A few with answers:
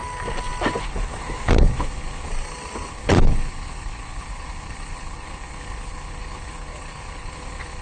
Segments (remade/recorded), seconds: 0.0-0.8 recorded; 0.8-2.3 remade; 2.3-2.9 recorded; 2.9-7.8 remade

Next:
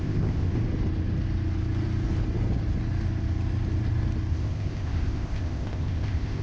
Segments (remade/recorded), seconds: 0.0-0.5 remade; 0.5-4.3 recorded; 4.3-6.4 remade

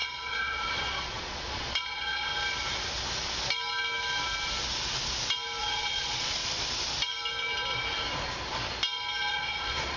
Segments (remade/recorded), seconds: 0.0-2.3 remade; 2.3-5.6 recorded; 5.6-6.4 remade; 6.4-9.3 recorded; 9.3-10.0 remade

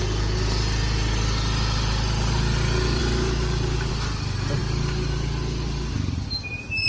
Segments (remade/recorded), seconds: 0.0-6.9 recorded

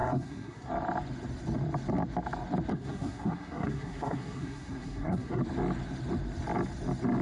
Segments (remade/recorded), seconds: 0.0-0.7 remade; 0.7-2.7 recorded; 2.7-5.4 remade; 5.4-7.2 recorded

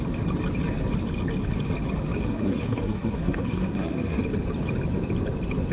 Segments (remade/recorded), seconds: 0.0-2.2 recorded; 2.2-4.2 remade; 4.2-5.7 recorded

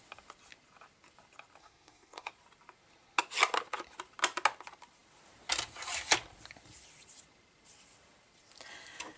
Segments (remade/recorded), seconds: 0.0-1.6 recorded; 1.6-2.3 remade; 2.3-9.2 recorded